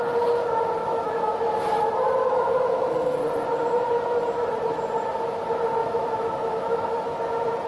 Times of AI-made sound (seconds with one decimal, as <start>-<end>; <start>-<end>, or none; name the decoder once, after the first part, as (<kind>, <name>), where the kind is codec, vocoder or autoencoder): 0.8-1.4 (autoencoder, DAC-VAE); 2.2-3.2; 5.8-7.2